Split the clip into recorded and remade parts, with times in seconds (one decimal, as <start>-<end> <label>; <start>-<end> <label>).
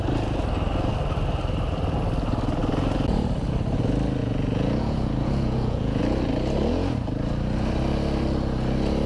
0.0-4.2 recorded; 4.2-6.0 remade; 6.0-9.1 recorded